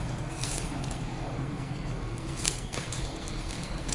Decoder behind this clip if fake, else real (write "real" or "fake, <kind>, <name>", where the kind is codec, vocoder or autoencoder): fake, codec, SNAC